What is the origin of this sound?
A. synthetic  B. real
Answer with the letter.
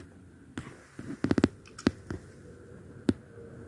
B